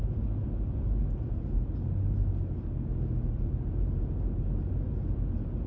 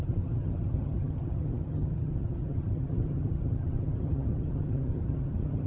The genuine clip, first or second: first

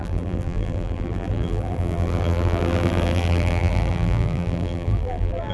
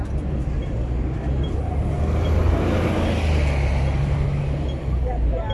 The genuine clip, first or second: second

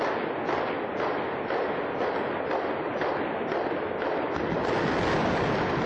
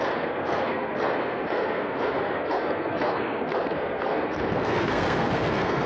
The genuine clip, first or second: first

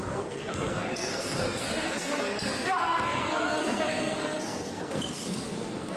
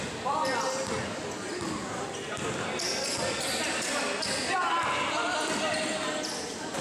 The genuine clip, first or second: second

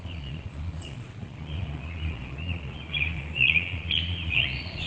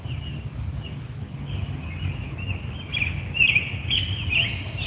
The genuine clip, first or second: second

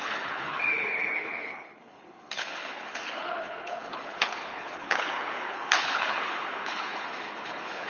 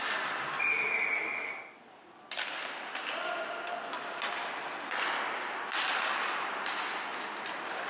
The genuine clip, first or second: second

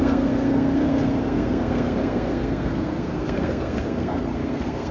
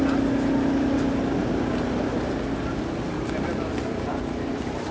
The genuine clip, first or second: second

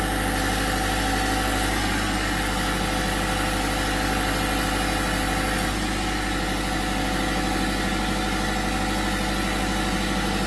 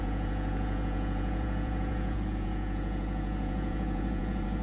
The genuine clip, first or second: first